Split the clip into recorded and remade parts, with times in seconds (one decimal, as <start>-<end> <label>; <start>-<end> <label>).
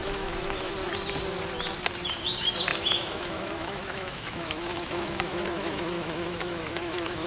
0.0-0.7 remade; 0.7-2.7 recorded; 2.7-7.3 remade